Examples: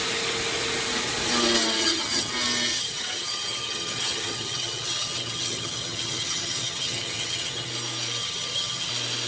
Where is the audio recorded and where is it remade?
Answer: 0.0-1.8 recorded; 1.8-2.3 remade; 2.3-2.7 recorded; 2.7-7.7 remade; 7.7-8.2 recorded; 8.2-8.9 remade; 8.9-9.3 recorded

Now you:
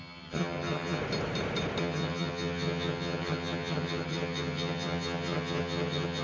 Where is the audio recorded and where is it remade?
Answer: 0.0-1.0 remade; 1.0-1.8 recorded; 1.8-6.2 remade

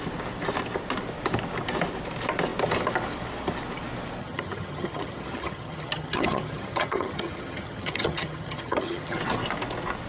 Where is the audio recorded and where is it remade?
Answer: 0.0-4.2 recorded; 4.2-9.2 remade; 9.2-10.1 recorded

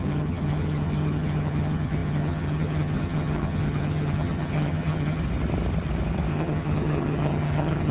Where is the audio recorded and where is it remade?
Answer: 0.0-5.2 remade; 5.2-6.3 recorded; 6.3-7.9 remade

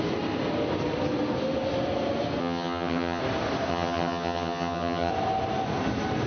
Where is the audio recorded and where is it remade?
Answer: 0.0-2.4 recorded; 2.4-3.2 remade; 3.2-3.7 recorded; 3.7-5.1 remade; 5.1-6.3 recorded

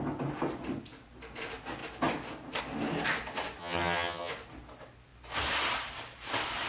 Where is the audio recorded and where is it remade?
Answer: 0.0-3.6 recorded; 3.6-4.3 remade; 4.3-6.7 recorded